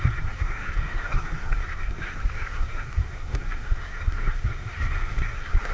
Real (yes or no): no